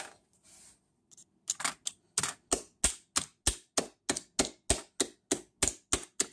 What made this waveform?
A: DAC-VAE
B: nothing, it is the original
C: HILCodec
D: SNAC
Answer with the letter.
B